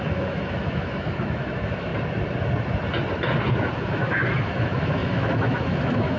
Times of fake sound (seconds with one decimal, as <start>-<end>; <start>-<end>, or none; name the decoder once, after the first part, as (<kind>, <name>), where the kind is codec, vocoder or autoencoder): 0.0-1.9 (autoencoder, DAC-VAE); 3.9-6.2